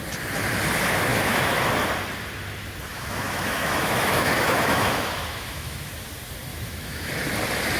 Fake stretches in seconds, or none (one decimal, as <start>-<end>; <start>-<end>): 1.1-1.7; 2.9-5.9; 6.5-7.1